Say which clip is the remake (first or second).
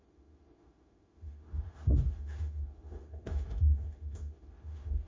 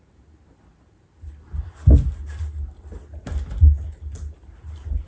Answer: first